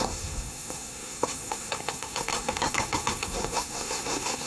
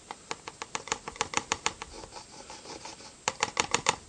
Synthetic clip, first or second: first